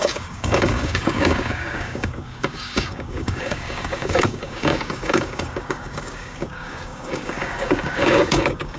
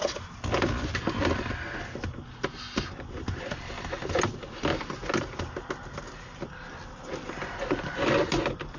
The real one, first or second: second